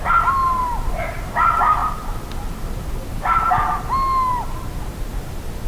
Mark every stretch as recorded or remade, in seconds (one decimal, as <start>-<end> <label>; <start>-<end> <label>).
0.0-5.7 recorded